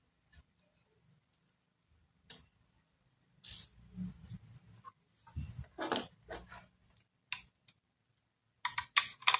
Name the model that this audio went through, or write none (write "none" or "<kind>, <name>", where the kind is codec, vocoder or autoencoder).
none